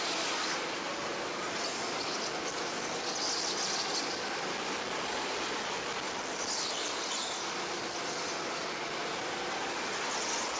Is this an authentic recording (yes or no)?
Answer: yes